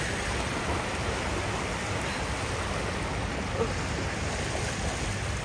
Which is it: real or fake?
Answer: real